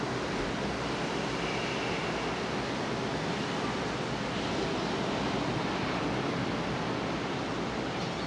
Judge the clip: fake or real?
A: real